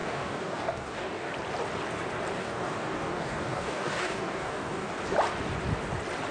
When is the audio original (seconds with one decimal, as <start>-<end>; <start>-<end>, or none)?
1.3-2.4; 4.9-6.3